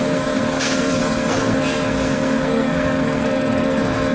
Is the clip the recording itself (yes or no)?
no